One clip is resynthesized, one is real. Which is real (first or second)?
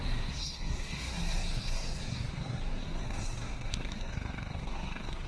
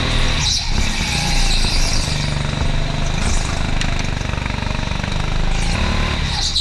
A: second